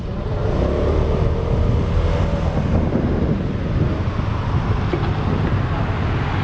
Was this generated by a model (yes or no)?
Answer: no